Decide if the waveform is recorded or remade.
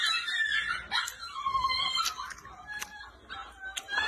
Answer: recorded